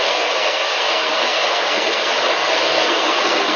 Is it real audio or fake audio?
fake